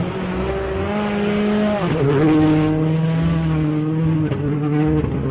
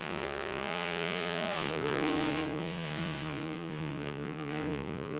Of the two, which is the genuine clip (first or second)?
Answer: first